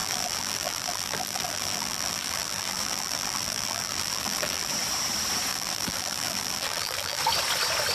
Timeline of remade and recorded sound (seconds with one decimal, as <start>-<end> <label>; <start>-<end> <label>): 0.0-4.7 remade; 4.7-5.5 recorded; 5.5-7.2 remade; 7.2-7.9 recorded